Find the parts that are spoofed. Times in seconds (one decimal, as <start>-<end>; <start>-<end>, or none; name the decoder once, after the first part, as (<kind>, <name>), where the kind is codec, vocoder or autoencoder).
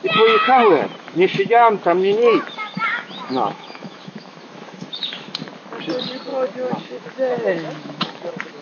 1.0-5.5 (autoencoder, DAC-VAE); 6.3-8.6